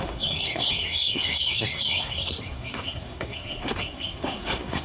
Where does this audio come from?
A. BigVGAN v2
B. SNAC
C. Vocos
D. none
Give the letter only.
B